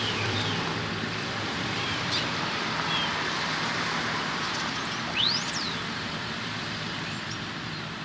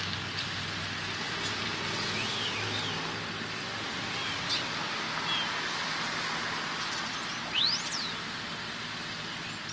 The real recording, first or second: second